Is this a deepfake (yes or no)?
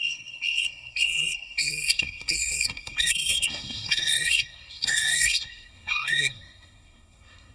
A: yes